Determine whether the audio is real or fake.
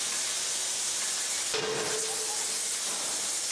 real